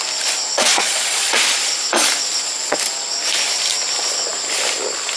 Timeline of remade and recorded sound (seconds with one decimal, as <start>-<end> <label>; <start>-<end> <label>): 0.0-0.7 recorded; 0.7-1.3 remade; 1.3-5.2 recorded